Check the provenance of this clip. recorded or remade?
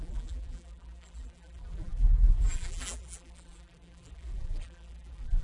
remade